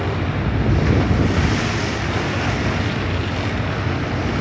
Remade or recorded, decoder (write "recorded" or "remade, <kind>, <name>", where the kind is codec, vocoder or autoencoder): recorded